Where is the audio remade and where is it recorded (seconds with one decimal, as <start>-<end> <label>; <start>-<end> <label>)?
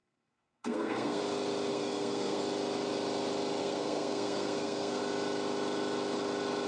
0.0-1.2 remade; 1.2-1.7 recorded; 1.7-2.4 remade; 2.4-3.6 recorded; 3.6-5.0 remade; 5.0-6.7 recorded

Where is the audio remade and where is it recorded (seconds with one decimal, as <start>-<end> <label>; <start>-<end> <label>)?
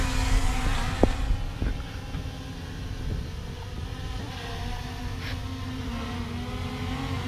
0.0-7.3 recorded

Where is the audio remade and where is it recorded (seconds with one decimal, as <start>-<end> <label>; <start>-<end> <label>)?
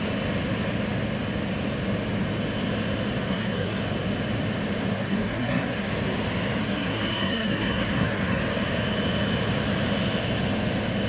0.0-3.3 recorded; 3.3-3.8 remade; 3.8-4.9 recorded; 4.9-5.9 remade; 5.9-6.6 recorded; 6.6-8.4 remade; 8.4-11.1 recorded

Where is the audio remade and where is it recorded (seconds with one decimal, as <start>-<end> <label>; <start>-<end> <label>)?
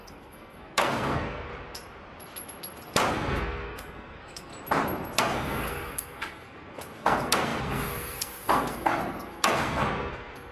0.0-1.5 remade; 1.5-3.1 recorded; 3.1-4.5 remade; 4.5-5.2 recorded; 5.2-10.5 remade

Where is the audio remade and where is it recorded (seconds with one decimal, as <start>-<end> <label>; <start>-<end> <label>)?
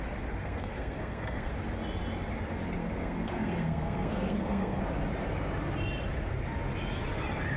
0.0-0.4 recorded; 0.4-1.5 remade; 1.5-2.8 recorded; 2.8-4.8 remade; 4.8-7.6 recorded